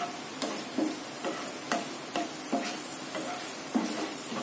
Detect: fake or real real